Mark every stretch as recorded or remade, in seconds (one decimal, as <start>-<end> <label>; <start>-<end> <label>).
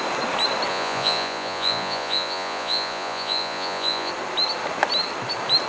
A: 0.0-0.7 recorded; 0.7-4.1 remade; 4.1-5.7 recorded